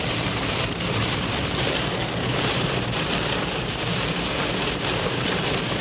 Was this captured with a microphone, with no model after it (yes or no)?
no